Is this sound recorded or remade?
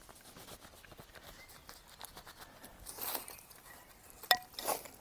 recorded